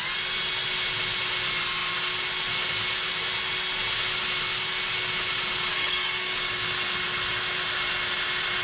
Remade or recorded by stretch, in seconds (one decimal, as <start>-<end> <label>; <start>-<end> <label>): 0.0-5.7 recorded; 5.7-6.7 remade; 6.7-8.6 recorded